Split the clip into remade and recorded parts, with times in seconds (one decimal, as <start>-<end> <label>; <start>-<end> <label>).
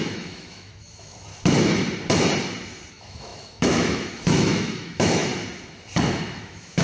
0.0-1.3 remade; 1.3-2.9 recorded; 2.9-5.3 remade; 5.3-6.1 recorded; 6.1-6.8 remade